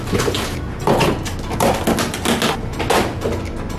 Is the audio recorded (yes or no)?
yes